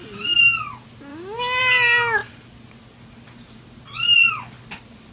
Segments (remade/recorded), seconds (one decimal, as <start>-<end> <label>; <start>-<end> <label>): 0.0-1.1 recorded; 1.1-1.6 remade; 1.6-5.1 recorded